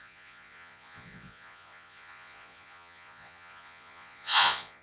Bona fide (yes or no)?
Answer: no